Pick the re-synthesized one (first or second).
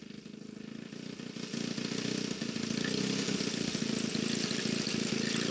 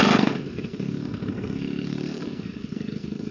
second